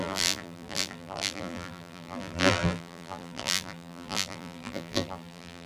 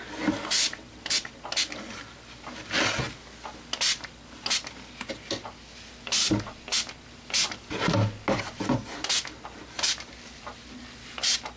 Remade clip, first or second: first